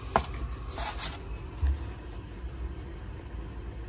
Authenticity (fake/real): real